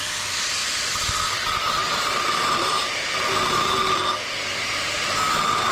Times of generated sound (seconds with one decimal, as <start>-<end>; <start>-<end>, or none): 1.9-4.0